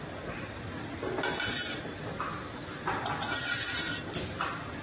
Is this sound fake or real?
real